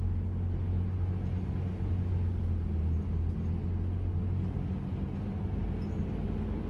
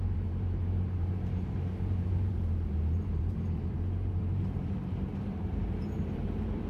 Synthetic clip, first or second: second